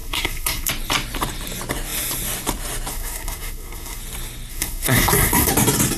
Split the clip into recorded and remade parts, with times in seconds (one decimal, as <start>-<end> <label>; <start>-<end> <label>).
0.0-0.7 remade; 0.7-2.9 recorded; 2.9-4.0 remade; 4.0-4.5 recorded; 4.5-5.5 remade; 5.5-6.0 recorded